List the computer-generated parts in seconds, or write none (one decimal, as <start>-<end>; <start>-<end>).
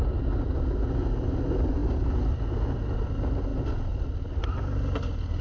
none